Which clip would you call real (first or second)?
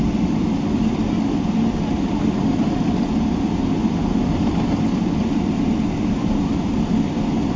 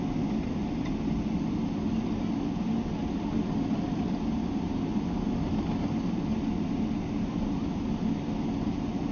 second